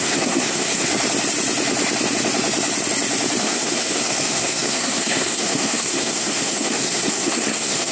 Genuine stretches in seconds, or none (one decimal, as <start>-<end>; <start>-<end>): 0.9-3.4